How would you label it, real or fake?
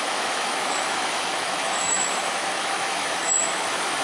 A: fake